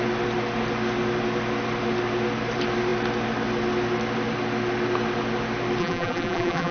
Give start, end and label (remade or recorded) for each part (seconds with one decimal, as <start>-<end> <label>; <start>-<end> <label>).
0.0-5.8 recorded; 5.8-6.7 remade